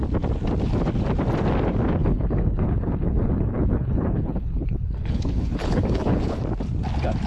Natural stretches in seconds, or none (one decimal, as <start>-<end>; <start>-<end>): 0.0-2.0; 6.4-7.3